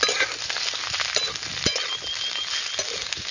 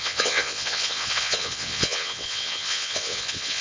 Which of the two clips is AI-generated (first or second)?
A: second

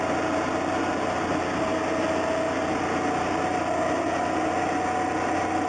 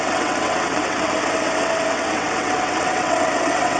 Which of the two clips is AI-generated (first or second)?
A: second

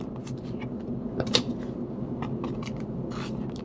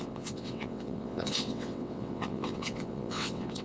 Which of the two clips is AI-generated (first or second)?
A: second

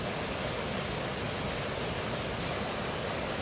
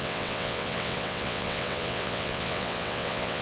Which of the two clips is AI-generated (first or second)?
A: second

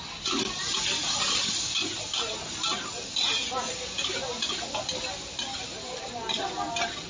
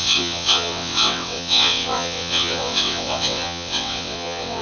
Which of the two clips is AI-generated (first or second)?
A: second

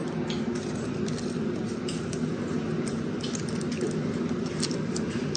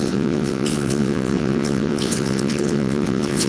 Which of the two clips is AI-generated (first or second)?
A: second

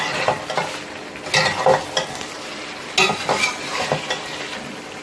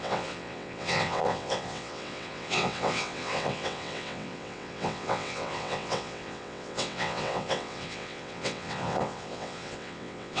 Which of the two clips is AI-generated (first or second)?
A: second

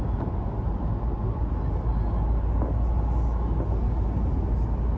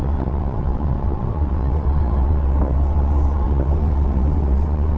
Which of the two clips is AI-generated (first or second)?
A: second